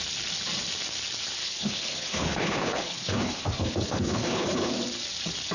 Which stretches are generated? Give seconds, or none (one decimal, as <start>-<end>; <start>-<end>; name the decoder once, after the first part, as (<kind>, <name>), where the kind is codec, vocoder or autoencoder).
1.4-4.7 (codec, HILCodec)